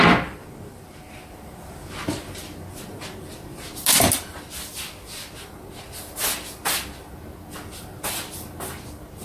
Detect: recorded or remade recorded